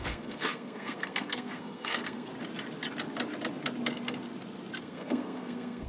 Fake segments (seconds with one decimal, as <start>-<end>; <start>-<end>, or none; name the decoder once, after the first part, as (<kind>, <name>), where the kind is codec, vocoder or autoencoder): 0.0-2.3 (codec, SNAC); 4.8-5.9